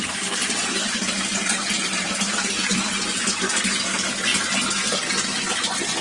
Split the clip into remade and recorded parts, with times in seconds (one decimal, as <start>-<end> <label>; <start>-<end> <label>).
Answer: 0.0-4.3 remade; 4.3-6.0 recorded